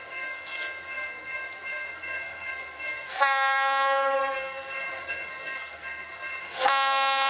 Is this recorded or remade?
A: remade